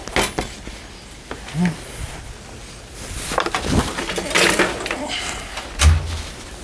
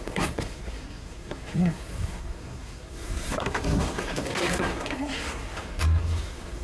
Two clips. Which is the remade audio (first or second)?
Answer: second